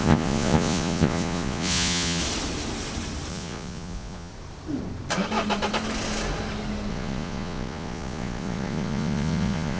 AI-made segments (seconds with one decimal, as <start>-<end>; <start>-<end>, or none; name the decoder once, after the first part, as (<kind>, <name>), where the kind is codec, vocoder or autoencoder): 0.0-2.2 (vocoder, Vocos); 3.3-4.3; 6.9-9.8